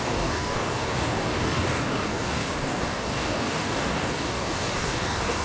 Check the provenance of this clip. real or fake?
fake